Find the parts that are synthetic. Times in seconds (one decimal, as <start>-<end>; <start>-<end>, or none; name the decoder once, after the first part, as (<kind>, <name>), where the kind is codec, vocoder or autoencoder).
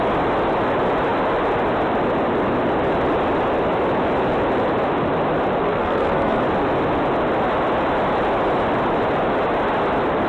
5.6-6.4 (codec, SNAC)